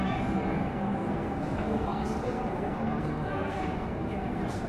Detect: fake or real fake